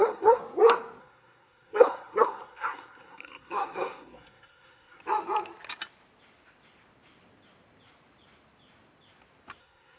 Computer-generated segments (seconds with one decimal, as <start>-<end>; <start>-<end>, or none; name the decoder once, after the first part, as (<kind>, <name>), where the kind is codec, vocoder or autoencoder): 0.0-0.4 (codec, SNAC); 1.0-5.0; 9.6-10.0